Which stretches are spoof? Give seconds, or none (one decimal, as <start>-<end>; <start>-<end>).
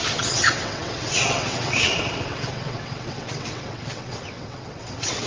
0.0-5.3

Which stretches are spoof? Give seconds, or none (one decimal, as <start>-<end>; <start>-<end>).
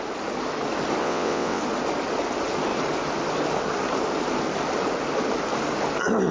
1.0-1.6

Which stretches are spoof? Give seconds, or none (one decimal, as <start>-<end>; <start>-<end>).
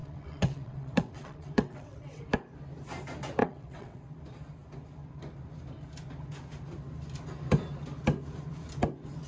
0.0-2.2; 3.4-4.0